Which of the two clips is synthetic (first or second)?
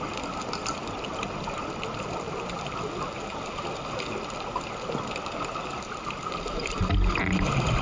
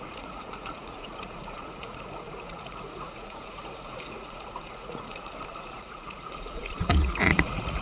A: second